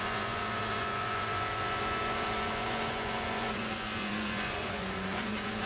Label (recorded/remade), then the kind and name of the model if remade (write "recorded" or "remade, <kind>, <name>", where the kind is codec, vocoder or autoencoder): remade, vocoder, Vocos